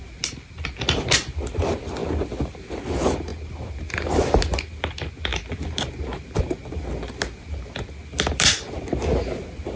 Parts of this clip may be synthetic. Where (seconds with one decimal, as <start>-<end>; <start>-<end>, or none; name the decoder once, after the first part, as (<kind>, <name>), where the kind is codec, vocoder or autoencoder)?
none